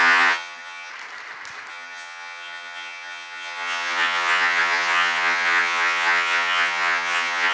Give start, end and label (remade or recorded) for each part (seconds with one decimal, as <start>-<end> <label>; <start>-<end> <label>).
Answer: 0.0-0.9 remade; 0.9-1.7 recorded; 1.7-7.5 remade